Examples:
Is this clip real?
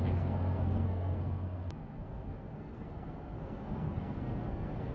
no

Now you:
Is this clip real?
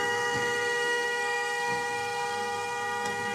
no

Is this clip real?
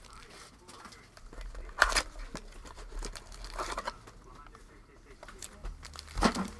yes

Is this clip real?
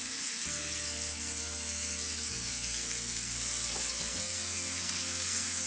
no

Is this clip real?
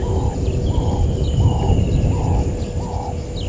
yes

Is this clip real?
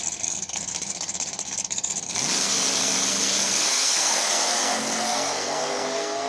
no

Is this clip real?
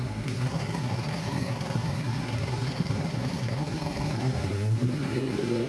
no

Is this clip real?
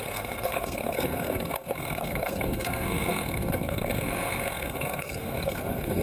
no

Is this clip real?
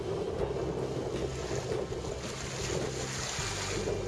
yes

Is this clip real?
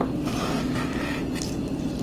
yes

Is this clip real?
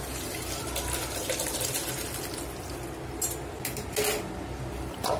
yes